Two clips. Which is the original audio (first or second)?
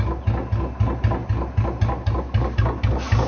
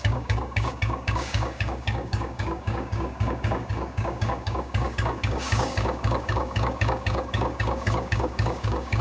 first